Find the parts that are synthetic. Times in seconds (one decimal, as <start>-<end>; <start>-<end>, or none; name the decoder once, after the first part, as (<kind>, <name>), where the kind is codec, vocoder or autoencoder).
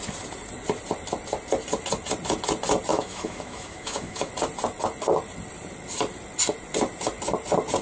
2.9-4.3 (autoencoder, DAC-VAE)